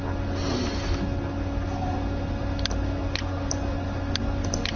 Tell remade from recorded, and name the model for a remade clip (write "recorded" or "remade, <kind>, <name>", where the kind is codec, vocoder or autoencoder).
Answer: recorded